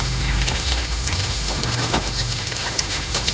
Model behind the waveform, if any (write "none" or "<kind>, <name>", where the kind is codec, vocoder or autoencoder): autoencoder, DAC-VAE